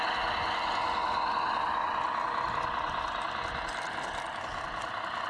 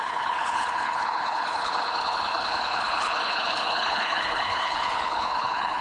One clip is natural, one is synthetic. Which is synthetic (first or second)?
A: second